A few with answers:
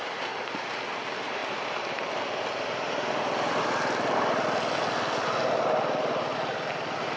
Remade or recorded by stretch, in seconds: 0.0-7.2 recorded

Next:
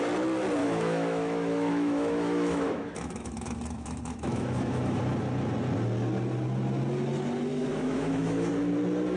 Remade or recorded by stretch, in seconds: 0.0-0.6 recorded; 0.6-5.0 remade; 5.0-7.5 recorded; 7.5-8.5 remade; 8.5-9.2 recorded

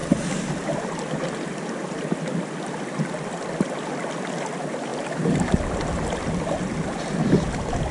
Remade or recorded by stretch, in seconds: 0.0-7.9 recorded